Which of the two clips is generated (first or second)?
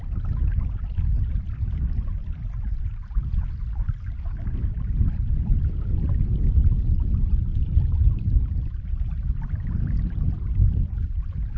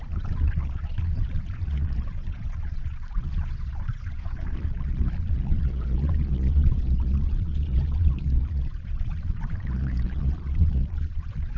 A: second